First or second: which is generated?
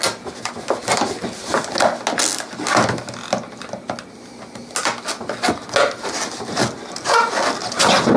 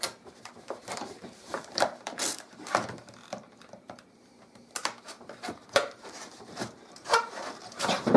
second